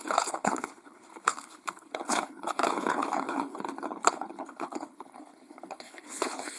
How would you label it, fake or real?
fake